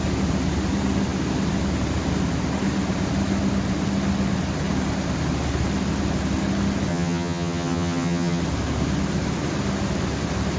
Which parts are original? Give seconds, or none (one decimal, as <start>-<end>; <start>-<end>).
0.0-6.9; 8.4-10.6